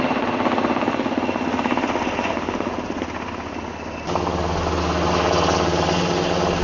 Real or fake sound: real